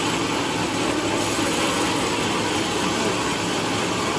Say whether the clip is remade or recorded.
recorded